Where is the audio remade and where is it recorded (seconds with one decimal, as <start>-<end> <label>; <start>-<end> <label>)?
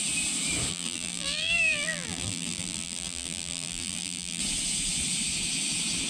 0.0-0.7 recorded; 0.7-4.4 remade; 4.4-6.1 recorded